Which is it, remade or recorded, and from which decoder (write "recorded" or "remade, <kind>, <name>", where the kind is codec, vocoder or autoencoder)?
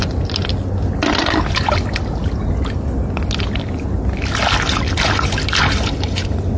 recorded